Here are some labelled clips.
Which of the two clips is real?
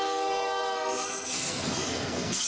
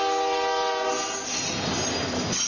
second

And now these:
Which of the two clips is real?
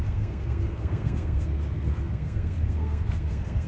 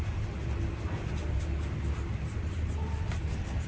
second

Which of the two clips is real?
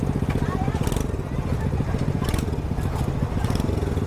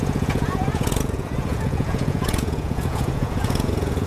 first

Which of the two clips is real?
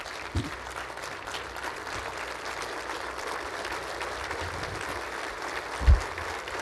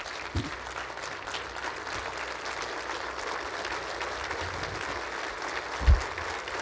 second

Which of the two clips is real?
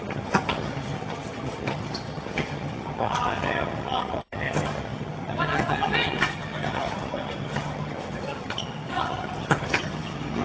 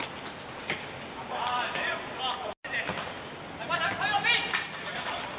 second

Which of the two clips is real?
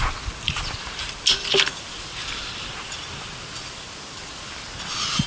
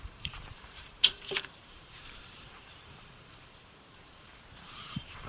first